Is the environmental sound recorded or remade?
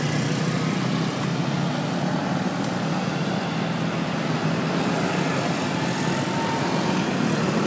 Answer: recorded